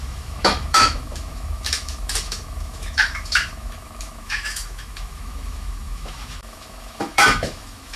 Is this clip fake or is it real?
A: fake